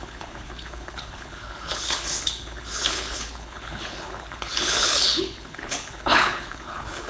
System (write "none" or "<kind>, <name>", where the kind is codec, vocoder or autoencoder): codec, HILCodec